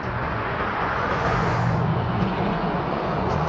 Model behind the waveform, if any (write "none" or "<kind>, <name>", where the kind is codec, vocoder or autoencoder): vocoder, Vocos